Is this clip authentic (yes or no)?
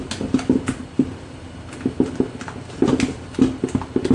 yes